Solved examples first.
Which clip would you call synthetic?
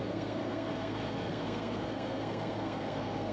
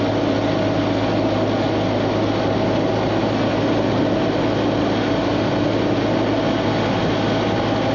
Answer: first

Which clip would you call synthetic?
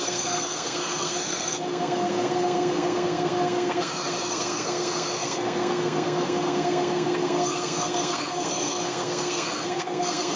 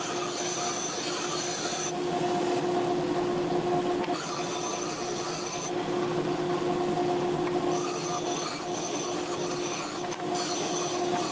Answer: first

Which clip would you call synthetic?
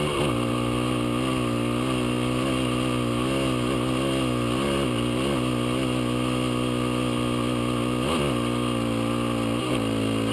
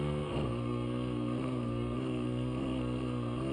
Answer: second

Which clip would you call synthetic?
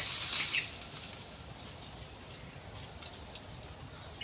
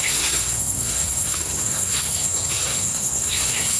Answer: second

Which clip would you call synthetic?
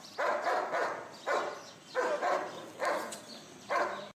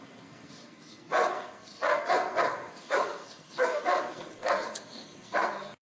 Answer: second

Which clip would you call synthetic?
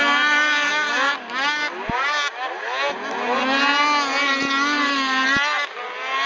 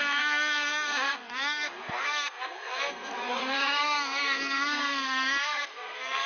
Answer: second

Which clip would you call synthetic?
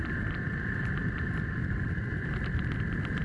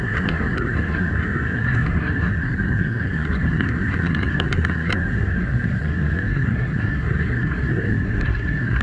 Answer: second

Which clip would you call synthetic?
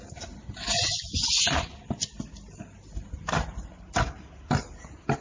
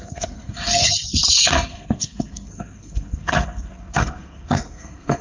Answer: second